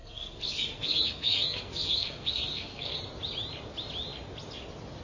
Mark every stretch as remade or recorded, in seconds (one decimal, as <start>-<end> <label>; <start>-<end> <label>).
0.0-3.0 remade; 3.0-5.0 recorded